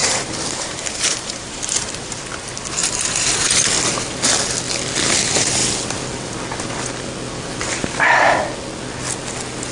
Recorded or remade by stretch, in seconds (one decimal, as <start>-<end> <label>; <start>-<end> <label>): 0.0-2.2 remade; 2.2-2.8 recorded; 2.8-3.7 remade; 3.7-9.7 recorded